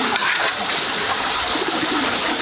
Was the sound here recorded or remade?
remade